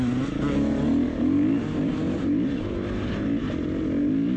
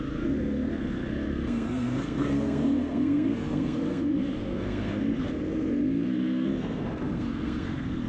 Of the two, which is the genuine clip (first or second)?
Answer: first